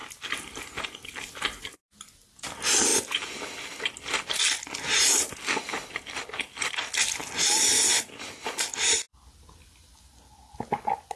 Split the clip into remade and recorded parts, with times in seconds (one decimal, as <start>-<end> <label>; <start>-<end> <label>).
0.0-11.2 recorded